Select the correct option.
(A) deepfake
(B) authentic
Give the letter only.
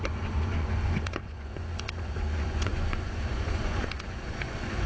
A